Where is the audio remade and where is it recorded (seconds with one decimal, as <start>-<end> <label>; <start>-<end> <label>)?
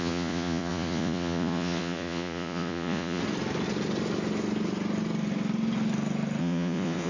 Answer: 0.0-3.2 remade; 3.2-6.4 recorded; 6.4-7.1 remade